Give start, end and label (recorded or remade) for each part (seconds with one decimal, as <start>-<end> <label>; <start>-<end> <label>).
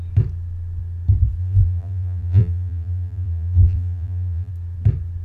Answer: 0.0-1.4 recorded; 1.4-4.5 remade; 4.5-5.2 recorded